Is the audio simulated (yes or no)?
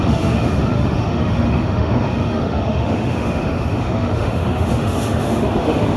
yes